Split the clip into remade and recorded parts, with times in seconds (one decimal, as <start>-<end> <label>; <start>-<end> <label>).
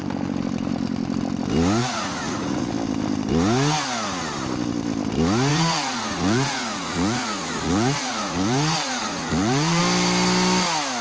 0.0-1.8 recorded; 1.8-2.7 remade; 2.7-5.5 recorded; 5.5-9.8 remade; 9.8-11.0 recorded